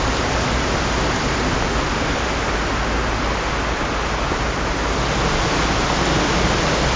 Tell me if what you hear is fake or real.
real